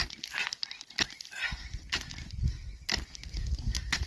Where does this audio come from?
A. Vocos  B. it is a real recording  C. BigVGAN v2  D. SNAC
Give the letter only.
B